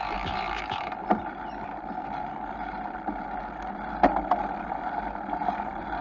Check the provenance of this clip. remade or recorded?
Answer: recorded